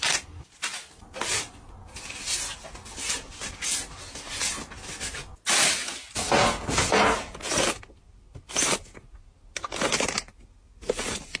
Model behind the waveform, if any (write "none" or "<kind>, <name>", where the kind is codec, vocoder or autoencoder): none